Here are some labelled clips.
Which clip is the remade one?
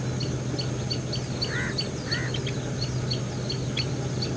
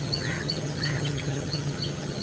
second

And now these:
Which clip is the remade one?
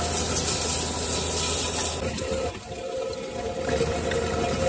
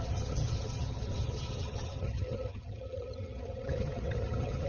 second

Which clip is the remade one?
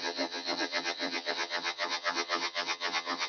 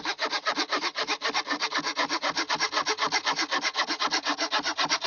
first